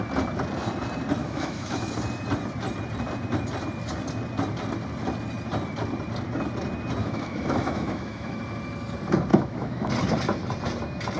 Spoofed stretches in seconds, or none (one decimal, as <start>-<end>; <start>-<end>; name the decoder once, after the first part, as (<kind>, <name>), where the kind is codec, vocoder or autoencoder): 1.2-1.9 (autoencoder, DAC-VAE); 7.0-8.4; 9.3-9.9